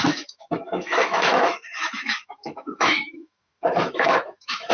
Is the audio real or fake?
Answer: fake